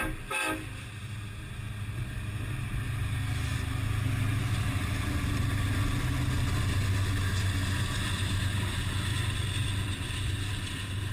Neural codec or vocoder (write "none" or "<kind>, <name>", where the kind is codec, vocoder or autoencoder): none